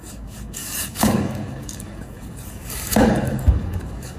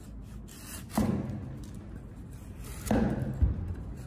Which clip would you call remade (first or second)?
first